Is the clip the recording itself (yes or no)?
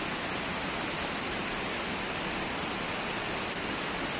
yes